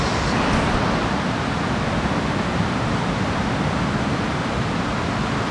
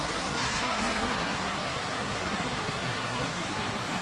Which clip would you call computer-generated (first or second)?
second